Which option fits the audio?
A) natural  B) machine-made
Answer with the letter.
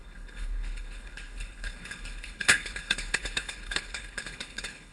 B